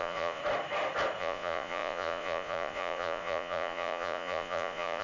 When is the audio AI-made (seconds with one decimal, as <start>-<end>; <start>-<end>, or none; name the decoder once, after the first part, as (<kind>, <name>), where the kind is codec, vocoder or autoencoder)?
0.0-0.4 (vocoder, Vocos); 1.2-5.0